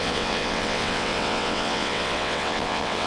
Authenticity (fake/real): fake